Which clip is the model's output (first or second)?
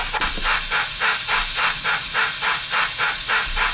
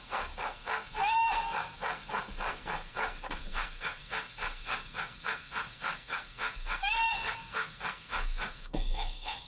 second